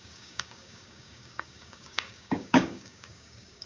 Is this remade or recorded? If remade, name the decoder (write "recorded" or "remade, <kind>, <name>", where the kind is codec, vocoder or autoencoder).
remade, codec, DAC